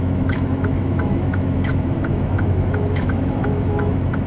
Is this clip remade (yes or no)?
yes